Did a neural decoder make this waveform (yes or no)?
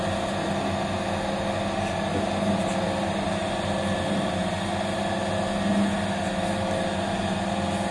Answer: no